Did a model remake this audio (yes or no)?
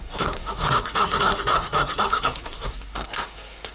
yes